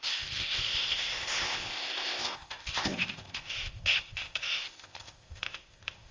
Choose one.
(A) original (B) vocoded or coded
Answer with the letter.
B